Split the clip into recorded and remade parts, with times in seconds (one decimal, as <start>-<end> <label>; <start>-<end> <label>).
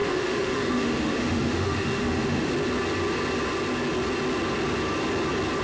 0.0-2.5 remade; 2.5-5.6 recorded